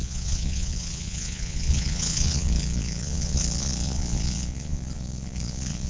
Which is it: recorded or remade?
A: remade